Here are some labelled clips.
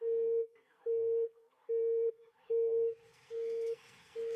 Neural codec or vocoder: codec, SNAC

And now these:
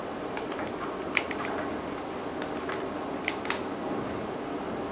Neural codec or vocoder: none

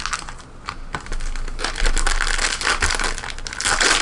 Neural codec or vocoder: none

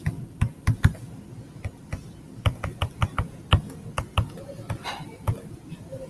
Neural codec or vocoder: none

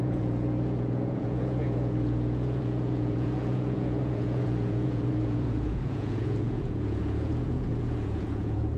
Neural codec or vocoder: vocoder, Vocos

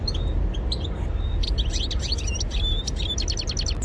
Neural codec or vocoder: none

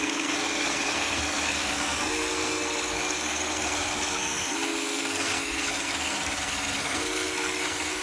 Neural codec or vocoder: codec, SNAC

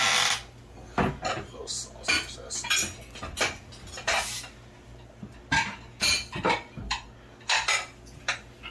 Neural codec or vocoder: none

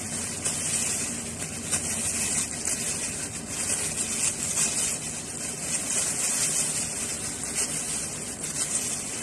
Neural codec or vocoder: none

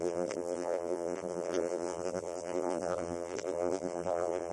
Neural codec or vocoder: vocoder, BigVGAN v2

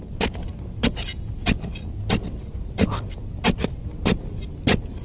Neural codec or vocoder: none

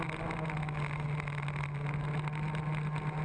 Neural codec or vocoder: none